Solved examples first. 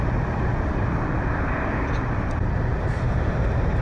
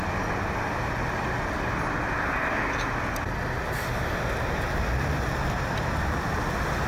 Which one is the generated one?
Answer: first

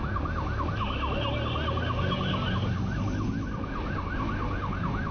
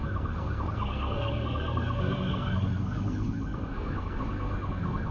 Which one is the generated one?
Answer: second